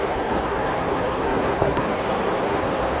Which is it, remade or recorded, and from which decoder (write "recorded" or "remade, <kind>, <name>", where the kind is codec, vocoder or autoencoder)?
remade, codec, SNAC